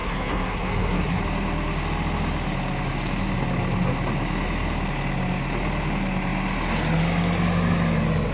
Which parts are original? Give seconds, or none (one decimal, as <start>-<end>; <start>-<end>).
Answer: 1.2-8.3